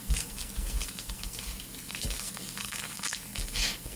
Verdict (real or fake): fake